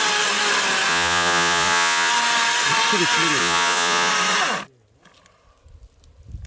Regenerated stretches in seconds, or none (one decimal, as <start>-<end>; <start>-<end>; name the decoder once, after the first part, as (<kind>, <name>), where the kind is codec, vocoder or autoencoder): 0.9-2.1 (vocoder, Vocos); 3.4-4.1

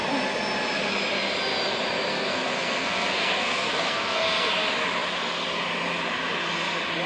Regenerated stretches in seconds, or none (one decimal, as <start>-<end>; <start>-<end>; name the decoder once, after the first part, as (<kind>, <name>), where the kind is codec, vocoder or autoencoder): 2.1-4.5 (codec, SNAC)

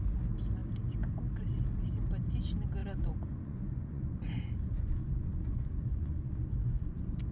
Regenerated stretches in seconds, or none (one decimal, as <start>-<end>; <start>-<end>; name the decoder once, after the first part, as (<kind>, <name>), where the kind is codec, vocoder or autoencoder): 2.8-7.3 (vocoder, Vocos)

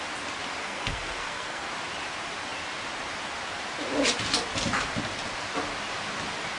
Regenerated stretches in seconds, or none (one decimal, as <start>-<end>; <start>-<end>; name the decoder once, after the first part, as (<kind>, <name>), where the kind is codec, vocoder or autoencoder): 0.6-1.7 (codec, SNAC)